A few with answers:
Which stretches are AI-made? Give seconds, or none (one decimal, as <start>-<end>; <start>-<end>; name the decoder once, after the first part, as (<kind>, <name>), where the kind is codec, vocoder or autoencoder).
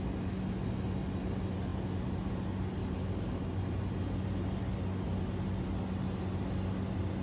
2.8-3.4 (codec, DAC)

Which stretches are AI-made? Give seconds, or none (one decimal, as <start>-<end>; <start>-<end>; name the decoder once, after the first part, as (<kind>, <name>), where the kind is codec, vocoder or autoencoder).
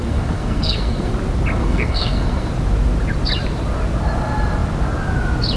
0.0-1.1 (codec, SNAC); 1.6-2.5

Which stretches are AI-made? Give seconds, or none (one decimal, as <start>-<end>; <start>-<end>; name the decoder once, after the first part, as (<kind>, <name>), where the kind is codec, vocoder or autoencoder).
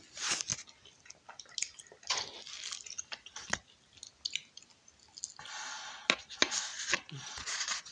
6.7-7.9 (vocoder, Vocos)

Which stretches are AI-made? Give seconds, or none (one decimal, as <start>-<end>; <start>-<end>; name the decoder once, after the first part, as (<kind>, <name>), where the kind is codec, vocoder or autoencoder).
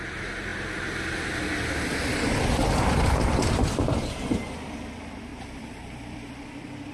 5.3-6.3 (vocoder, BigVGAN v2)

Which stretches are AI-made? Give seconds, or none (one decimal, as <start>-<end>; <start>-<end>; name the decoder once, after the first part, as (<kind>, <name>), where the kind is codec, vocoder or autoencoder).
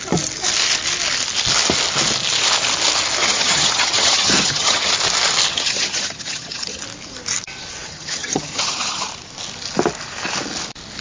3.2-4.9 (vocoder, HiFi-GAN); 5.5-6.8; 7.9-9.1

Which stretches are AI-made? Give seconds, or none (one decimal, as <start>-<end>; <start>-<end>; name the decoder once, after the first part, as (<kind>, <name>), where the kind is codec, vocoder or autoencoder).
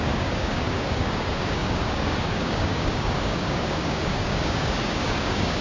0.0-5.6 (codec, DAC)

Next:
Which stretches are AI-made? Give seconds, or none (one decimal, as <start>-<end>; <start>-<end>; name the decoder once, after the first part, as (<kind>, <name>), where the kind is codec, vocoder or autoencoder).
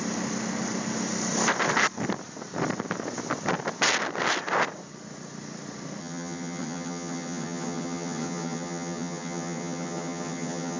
6.0-10.8 (vocoder, HiFi-GAN)